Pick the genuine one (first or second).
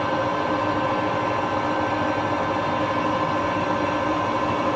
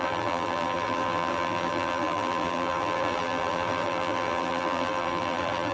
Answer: first